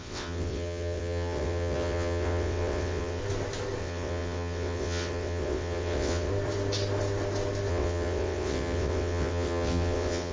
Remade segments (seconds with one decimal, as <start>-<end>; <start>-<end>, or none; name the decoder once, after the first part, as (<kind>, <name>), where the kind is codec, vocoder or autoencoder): 0.0-3.2 (vocoder, WaveNeXt); 3.8-6.3; 7.7-10.3